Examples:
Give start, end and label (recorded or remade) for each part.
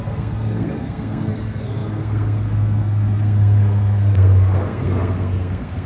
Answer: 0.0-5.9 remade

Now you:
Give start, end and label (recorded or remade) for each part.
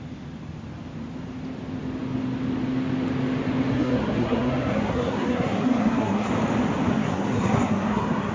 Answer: 0.0-3.7 recorded; 3.7-6.3 remade; 6.3-6.9 recorded; 6.9-8.3 remade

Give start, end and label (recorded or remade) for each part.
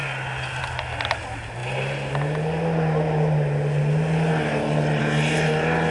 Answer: 0.0-5.9 recorded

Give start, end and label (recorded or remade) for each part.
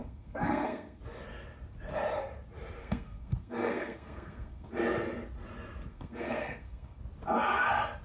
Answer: 0.0-1.0 remade; 1.0-2.8 recorded; 2.8-4.7 remade; 4.7-5.9 recorded; 5.9-7.0 remade; 7.0-8.0 recorded